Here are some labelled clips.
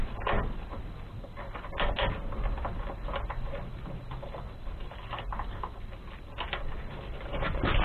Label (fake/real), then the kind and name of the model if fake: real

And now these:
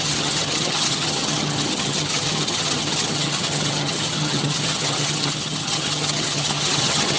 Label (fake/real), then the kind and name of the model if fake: fake, vocoder, HiFi-GAN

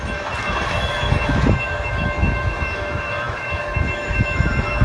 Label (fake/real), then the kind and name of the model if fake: fake, autoencoder, DAC-VAE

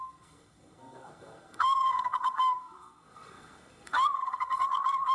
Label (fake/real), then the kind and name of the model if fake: fake, codec, SNAC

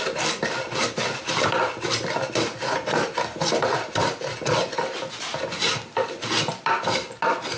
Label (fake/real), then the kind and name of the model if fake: real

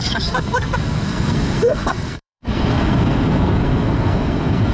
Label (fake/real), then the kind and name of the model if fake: fake, codec, SNAC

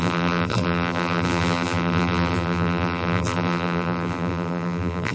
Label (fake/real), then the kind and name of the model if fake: fake, vocoder, BigVGAN v2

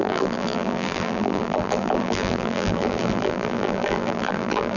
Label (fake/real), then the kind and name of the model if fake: fake, vocoder, BigVGAN v2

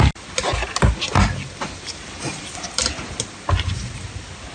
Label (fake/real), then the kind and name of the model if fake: real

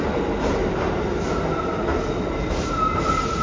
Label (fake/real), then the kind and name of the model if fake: real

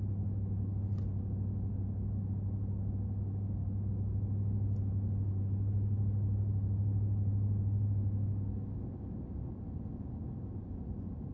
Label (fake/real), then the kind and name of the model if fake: real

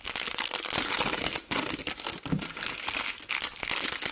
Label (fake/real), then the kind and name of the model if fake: real